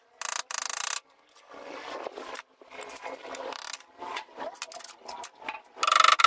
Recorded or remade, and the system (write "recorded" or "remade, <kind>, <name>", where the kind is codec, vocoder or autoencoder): recorded